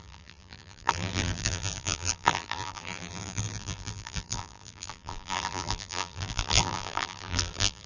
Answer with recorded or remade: remade